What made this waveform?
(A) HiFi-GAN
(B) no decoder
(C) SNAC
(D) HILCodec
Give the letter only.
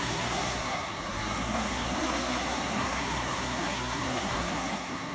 C